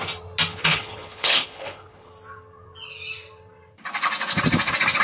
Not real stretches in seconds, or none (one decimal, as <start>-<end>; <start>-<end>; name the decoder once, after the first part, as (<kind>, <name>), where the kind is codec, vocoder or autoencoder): 0.5-2.1 (codec, HILCodec)